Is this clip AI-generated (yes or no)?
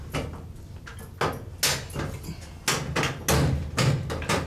no